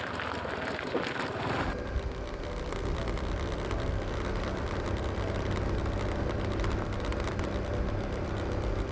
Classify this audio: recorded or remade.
recorded